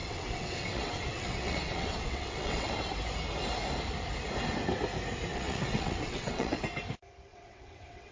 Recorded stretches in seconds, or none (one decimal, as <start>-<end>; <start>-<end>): 2.7-5.3; 6.6-7.3